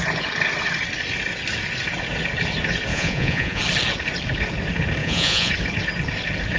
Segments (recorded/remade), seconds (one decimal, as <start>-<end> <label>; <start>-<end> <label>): 0.0-2.9 recorded; 2.9-3.6 remade; 3.6-5.0 recorded; 5.0-5.5 remade; 5.5-6.6 recorded

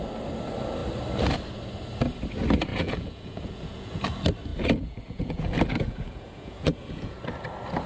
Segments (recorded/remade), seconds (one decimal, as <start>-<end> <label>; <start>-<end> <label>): 0.0-2.7 recorded; 2.7-4.0 remade; 4.0-4.5 recorded; 4.5-7.2 remade; 7.2-7.9 recorded

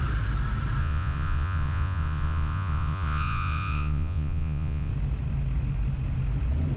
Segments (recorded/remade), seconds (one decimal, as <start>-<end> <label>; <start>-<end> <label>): 0.0-0.8 recorded; 0.8-4.9 remade; 4.9-6.8 recorded

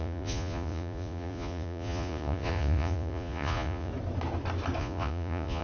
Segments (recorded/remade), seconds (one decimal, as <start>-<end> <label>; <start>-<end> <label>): 0.0-3.9 remade; 3.9-4.8 recorded; 4.8-5.6 remade

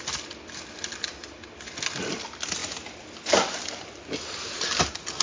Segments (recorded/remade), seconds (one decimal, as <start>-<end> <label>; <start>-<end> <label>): 0.0-5.2 recorded

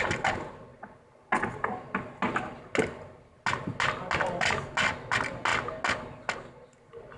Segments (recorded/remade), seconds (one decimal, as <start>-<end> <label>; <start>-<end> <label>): 0.0-7.2 recorded

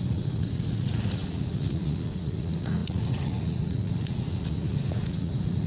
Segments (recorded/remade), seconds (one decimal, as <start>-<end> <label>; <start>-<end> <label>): 0.0-5.7 remade